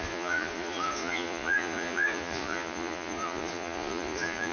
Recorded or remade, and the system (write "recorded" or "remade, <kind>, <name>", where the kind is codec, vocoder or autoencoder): remade, vocoder, Vocos